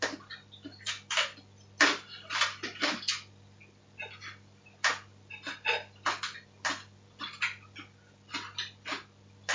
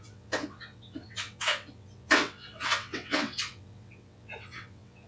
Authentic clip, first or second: first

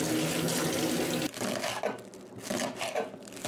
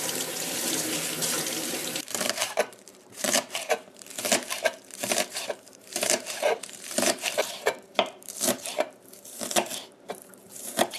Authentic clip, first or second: first